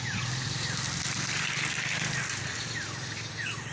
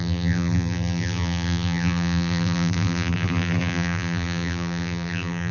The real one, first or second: first